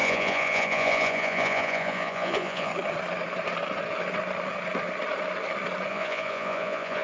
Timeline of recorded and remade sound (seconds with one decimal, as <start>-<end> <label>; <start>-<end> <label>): 0.0-2.7 remade; 2.7-5.9 recorded; 5.9-7.0 remade